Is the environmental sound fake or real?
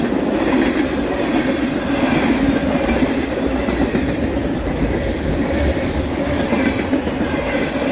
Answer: real